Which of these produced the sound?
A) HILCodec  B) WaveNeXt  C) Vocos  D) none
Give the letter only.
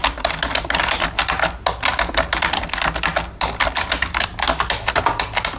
D